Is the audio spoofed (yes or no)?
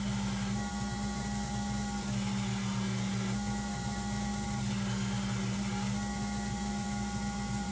no